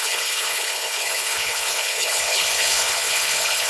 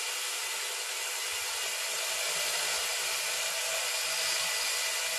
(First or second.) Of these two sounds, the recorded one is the second